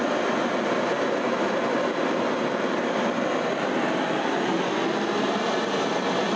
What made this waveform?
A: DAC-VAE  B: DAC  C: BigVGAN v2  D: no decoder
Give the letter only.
C